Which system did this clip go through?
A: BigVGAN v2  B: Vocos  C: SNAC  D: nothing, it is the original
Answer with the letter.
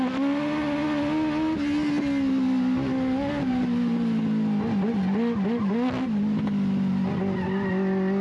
D